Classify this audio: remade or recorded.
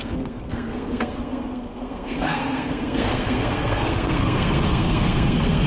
remade